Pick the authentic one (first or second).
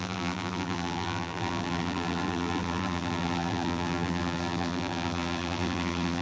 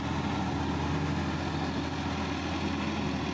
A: second